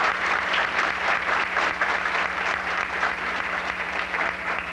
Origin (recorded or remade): remade